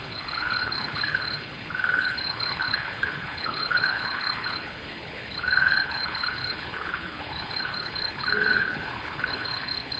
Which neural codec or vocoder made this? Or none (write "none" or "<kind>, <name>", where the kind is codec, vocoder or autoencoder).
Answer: codec, HILCodec